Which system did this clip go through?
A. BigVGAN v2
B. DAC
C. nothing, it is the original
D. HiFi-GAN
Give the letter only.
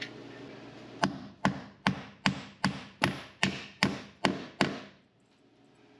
C